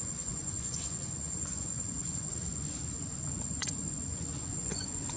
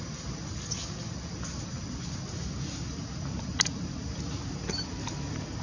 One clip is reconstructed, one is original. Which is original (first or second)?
second